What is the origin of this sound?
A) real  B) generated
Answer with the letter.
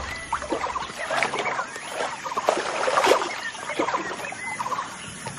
A